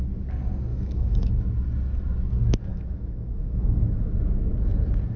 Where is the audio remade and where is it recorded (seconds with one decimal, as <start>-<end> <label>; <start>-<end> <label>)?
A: 0.0-0.7 recorded; 0.7-1.3 remade; 1.3-2.7 recorded; 2.7-4.1 remade; 4.1-5.2 recorded

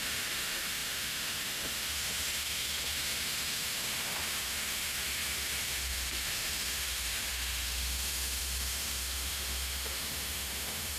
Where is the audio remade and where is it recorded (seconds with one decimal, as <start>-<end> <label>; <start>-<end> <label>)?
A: 0.0-11.0 remade

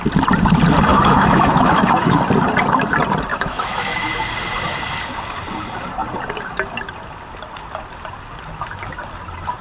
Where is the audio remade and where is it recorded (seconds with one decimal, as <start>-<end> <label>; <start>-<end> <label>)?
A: 0.0-0.9 recorded; 0.9-2.2 remade; 2.2-3.3 recorded; 3.3-4.1 remade; 4.1-9.6 recorded

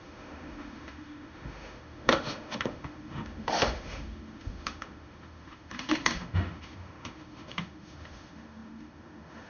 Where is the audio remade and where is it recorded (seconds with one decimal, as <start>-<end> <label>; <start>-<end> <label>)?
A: 0.0-9.5 remade

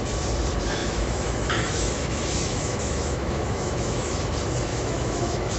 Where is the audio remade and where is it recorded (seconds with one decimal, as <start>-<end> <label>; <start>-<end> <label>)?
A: 0.0-0.8 recorded; 0.8-4.2 remade; 4.2-4.7 recorded; 4.7-5.6 remade

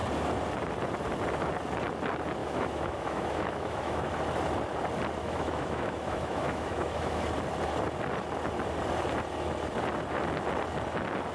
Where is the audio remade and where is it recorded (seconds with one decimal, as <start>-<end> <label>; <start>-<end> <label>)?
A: 0.0-2.4 recorded; 2.4-4.1 remade; 4.1-5.2 recorded; 5.2-7.2 remade; 7.2-11.3 recorded

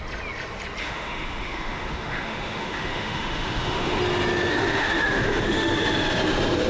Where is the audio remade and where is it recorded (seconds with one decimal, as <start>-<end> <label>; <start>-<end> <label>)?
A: 0.0-0.8 recorded; 0.8-4.0 remade; 4.0-4.5 recorded; 4.5-5.7 remade; 5.7-6.7 recorded

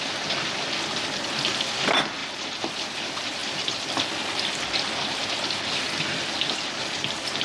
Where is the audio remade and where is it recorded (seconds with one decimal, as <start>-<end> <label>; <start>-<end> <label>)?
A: 0.0-7.4 recorded